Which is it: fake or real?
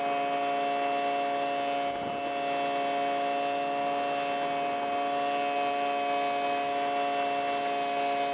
real